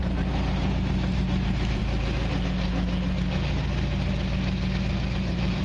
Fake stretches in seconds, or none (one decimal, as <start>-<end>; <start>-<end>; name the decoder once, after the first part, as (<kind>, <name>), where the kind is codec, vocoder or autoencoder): 0.0-1.8 (vocoder, BigVGAN v2); 5.1-5.6